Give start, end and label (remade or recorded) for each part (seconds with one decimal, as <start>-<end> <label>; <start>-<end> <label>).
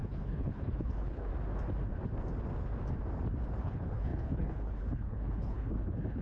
0.0-1.3 remade; 1.3-3.6 recorded; 3.6-6.2 remade